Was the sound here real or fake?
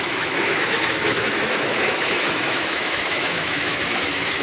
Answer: fake